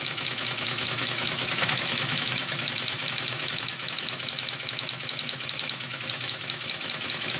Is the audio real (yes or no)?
no